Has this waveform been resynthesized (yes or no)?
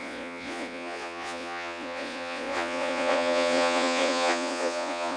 yes